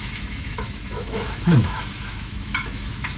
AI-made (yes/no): yes